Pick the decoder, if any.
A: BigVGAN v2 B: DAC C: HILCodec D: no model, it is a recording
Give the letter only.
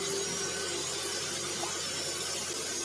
D